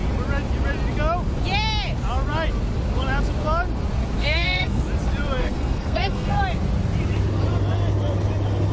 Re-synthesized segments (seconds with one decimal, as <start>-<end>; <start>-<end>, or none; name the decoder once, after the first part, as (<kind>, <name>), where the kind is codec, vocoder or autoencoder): 4.2-4.8 (codec, SNAC); 5.4-6.4